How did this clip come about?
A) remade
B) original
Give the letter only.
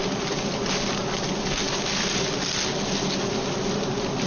B